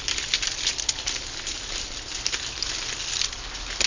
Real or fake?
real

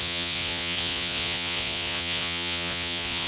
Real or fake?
fake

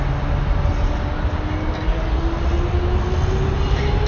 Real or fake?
real